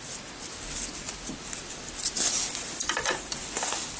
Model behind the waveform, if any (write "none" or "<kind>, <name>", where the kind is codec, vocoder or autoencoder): none